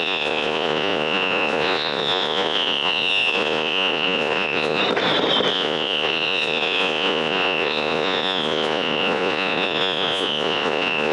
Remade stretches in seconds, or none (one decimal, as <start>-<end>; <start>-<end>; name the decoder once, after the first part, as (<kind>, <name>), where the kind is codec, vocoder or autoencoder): 0.0-4.8 (vocoder, Vocos); 5.5-11.1